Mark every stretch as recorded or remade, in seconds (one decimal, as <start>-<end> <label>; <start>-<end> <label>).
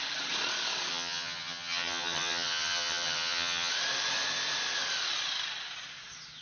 0.0-0.9 recorded; 0.9-3.7 remade; 3.7-6.4 recorded